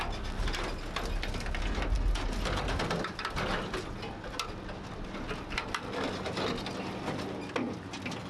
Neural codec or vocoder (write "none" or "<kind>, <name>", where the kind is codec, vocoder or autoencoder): none